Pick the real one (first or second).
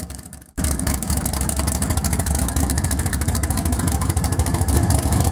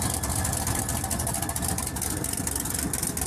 second